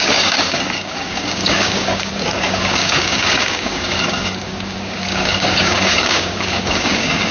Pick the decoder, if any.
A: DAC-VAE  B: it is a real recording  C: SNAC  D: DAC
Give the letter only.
D